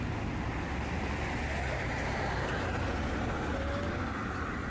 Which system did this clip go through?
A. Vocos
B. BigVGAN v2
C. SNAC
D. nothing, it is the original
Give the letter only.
D